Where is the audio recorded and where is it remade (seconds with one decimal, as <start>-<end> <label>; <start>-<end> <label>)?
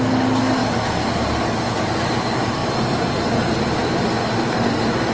0.0-5.1 recorded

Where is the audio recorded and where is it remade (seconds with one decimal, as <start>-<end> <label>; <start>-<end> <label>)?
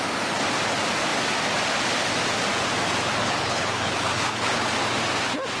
0.0-3.2 recorded; 3.2-4.7 remade; 4.7-5.6 recorded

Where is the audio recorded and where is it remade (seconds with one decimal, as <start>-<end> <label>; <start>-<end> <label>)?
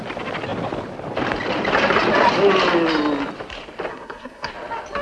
0.0-3.9 recorded; 3.9-4.5 remade; 4.5-5.0 recorded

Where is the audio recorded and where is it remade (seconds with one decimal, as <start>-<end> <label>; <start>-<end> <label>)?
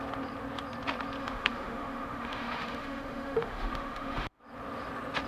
0.0-1.2 recorded; 1.2-4.4 remade; 4.4-5.3 recorded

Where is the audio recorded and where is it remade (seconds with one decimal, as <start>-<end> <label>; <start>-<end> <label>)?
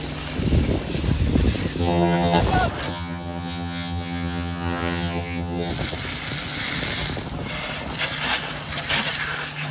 0.0-1.8 recorded; 1.8-2.4 remade; 2.4-2.9 recorded; 2.9-5.7 remade; 5.7-9.7 recorded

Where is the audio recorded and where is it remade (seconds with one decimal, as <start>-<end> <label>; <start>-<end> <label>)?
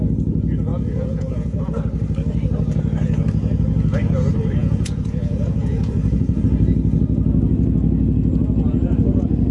0.0-0.7 recorded; 0.7-1.6 remade; 1.6-4.6 recorded; 4.6-6.4 remade; 6.4-9.5 recorded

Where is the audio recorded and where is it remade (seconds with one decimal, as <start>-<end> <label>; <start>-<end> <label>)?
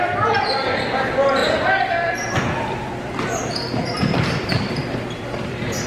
0.0-5.9 remade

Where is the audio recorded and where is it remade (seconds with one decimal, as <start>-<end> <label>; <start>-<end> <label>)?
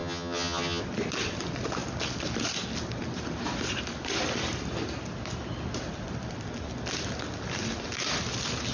0.0-0.8 remade; 0.8-8.7 recorded